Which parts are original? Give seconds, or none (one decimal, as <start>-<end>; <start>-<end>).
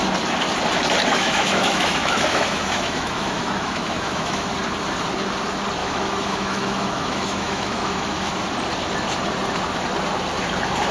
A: 0.0-1.1; 4.5-5.8; 8.3-10.9